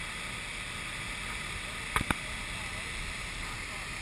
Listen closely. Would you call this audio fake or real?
real